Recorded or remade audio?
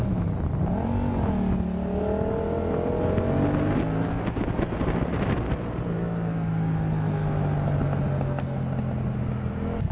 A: recorded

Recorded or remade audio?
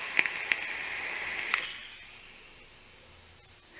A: recorded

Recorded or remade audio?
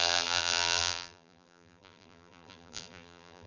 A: remade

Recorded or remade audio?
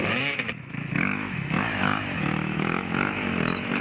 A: remade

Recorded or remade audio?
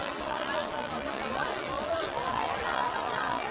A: remade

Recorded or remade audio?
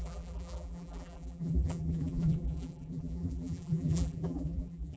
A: remade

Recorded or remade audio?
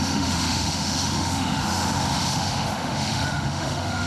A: remade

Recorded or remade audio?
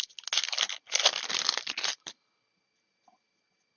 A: recorded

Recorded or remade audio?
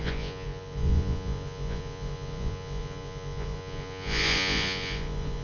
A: remade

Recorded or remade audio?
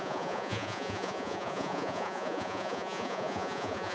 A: remade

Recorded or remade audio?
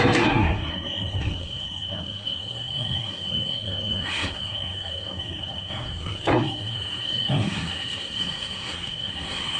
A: remade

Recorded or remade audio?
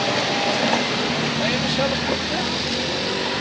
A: recorded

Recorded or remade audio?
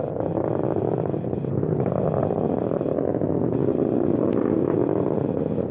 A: recorded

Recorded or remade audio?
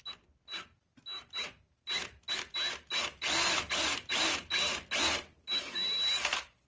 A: recorded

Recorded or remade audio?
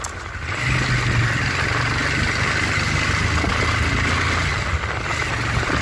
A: recorded